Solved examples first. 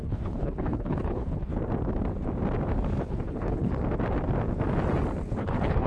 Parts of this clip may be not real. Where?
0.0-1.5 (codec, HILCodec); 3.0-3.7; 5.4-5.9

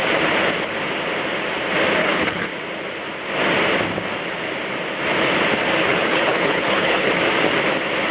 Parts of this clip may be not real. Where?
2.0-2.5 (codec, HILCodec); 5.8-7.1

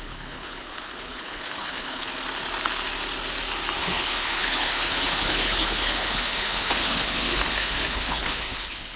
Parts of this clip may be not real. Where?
0.0-2.1 (codec, HILCodec); 3.8-9.0

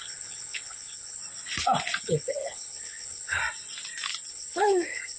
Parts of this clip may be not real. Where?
0.0-1.2 (codec, HILCodec); 2.0-3.4; 4.3-5.2